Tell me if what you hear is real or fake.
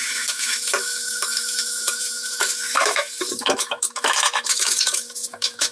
fake